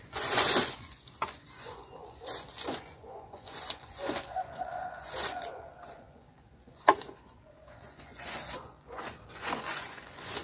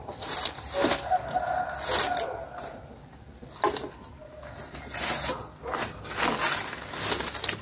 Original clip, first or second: second